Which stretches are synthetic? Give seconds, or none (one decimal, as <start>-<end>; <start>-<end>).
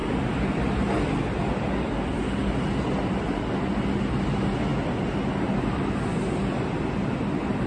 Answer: none